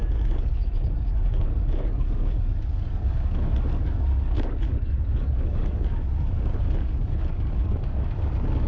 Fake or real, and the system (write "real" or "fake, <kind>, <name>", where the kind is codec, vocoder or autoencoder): fake, codec, DAC